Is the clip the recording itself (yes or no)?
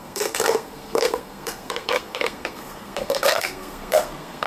no